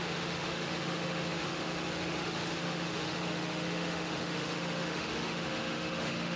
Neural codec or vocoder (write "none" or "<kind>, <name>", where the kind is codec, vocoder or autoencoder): autoencoder, DAC-VAE